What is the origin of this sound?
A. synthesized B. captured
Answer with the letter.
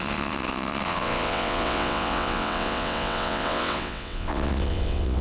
A